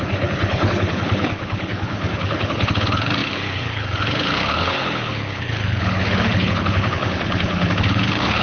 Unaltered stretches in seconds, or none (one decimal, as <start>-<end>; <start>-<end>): none